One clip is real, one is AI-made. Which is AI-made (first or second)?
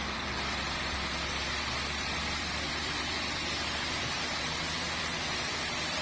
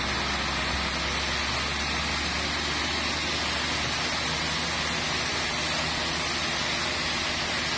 first